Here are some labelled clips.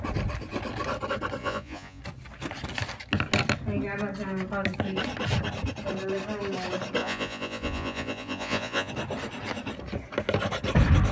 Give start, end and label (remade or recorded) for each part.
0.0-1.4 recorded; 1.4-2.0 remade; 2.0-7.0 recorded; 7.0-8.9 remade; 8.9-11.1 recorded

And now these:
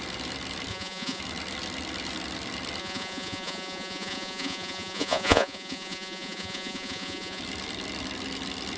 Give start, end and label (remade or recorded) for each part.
0.0-0.7 recorded; 0.7-1.2 remade; 1.2-2.8 recorded; 2.8-7.4 remade; 7.4-8.8 recorded

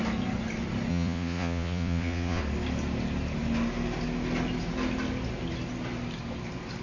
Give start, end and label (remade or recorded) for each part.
0.0-0.9 recorded; 0.9-2.4 remade; 2.4-6.8 recorded

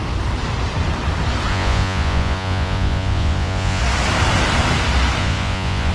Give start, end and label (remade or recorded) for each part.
0.0-1.5 recorded; 1.5-3.8 remade; 3.8-5.2 recorded; 5.2-5.9 remade

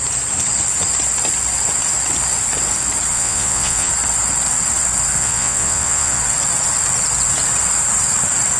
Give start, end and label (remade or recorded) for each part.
0.0-3.1 recorded; 3.1-3.9 remade; 3.9-5.2 recorded; 5.2-6.2 remade; 6.2-8.6 recorded

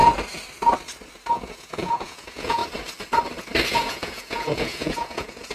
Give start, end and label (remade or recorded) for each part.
0.0-1.3 recorded; 1.3-2.6 remade; 2.6-3.7 recorded; 3.7-5.5 remade

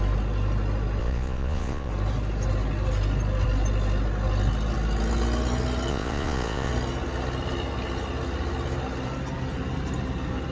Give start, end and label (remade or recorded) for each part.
0.0-1.0 recorded; 1.0-1.9 remade; 1.9-5.9 recorded; 5.9-6.7 remade; 6.7-10.5 recorded

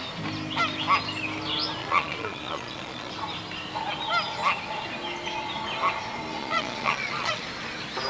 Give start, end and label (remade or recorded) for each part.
0.0-1.8 recorded; 1.8-3.1 remade; 3.1-6.4 recorded; 6.4-7.4 remade; 7.4-8.1 recorded